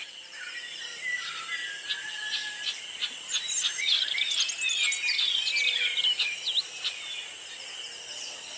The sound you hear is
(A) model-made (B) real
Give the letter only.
B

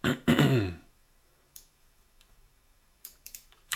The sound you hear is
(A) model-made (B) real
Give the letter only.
A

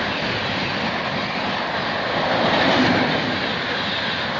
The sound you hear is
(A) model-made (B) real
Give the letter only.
B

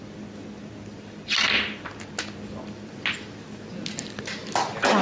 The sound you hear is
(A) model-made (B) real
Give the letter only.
B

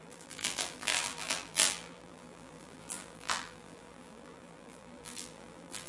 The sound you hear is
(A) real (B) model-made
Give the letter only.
B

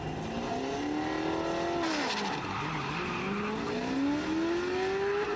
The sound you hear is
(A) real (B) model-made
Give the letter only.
A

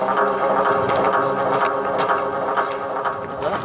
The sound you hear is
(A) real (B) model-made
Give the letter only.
A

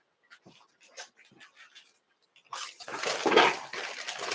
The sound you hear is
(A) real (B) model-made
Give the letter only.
A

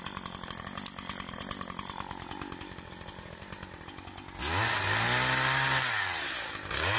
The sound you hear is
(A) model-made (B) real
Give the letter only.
B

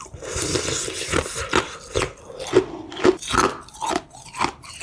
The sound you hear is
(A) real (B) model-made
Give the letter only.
A